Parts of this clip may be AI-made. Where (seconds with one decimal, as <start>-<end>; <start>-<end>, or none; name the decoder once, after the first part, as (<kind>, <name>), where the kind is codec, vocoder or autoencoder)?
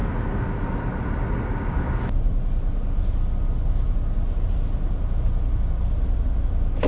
none